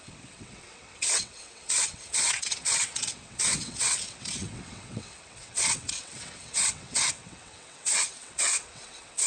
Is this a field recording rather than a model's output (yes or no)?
no